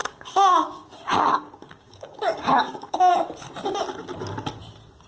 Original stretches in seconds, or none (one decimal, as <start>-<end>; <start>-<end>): 3.1-5.1